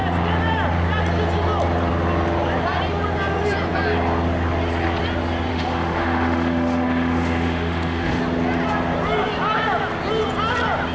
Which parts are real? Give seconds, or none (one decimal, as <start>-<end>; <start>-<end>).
0.0-5.5; 8.2-10.9